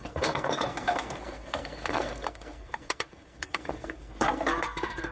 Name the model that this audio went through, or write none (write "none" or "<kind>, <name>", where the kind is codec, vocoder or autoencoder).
codec, SNAC